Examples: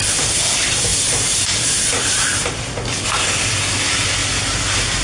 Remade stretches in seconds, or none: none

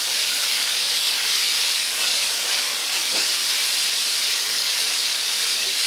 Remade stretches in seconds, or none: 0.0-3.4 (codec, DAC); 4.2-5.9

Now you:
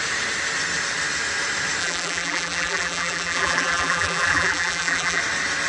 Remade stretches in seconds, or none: 1.8-5.2 (vocoder, BigVGAN v2)